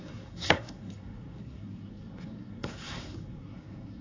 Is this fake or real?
fake